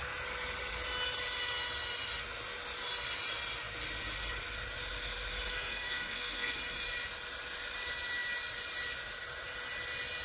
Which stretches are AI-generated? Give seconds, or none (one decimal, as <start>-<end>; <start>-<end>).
5.5-6.6